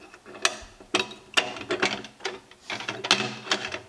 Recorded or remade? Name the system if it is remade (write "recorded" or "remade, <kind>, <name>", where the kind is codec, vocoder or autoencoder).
recorded